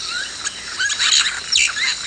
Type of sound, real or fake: real